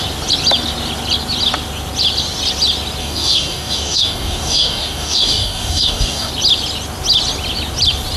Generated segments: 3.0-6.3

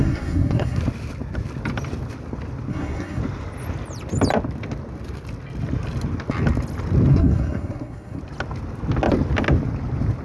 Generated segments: 0.0-0.8; 2.7-3.2; 7.1-8.2

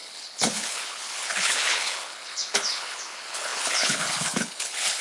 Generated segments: 0.0-5.0

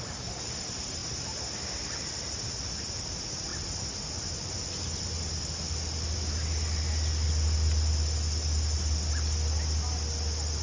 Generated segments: none

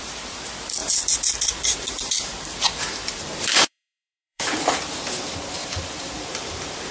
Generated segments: 0.8-4.9; 5.6-6.9

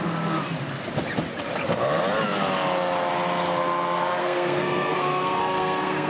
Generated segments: 4.2-6.1

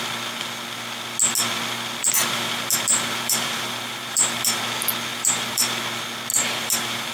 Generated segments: 2.0-4.6; 5.1-5.8; 6.3-7.1